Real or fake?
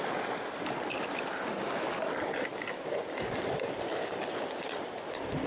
real